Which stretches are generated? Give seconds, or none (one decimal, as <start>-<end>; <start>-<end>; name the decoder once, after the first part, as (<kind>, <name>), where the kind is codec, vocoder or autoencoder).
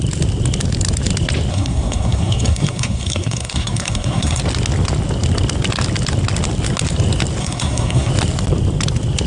1.5-4.4 (codec, SNAC); 7.4-8.1